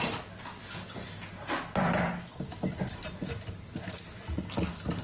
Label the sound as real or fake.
real